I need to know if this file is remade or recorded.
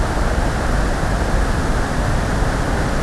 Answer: recorded